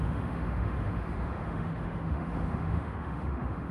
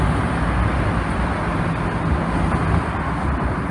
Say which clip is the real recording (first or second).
second